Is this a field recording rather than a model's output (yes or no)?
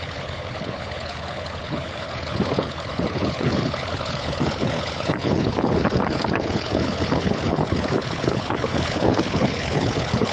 no